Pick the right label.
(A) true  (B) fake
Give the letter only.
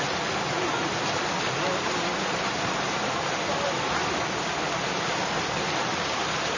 A